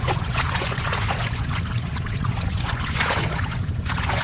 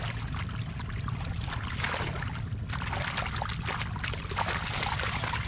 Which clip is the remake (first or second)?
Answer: first